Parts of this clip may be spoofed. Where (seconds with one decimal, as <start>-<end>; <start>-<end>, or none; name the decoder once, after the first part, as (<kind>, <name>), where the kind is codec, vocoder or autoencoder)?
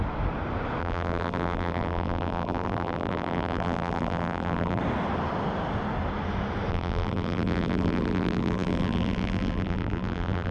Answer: 0.8-4.8 (vocoder, BigVGAN v2); 6.7-10.5